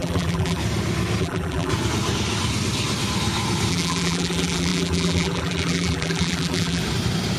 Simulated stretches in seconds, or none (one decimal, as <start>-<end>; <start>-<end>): 0.0-0.6; 1.2-1.7; 3.7-6.8